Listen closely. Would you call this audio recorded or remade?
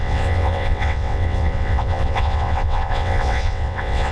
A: remade